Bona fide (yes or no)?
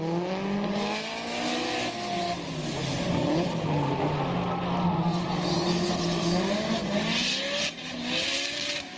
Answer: yes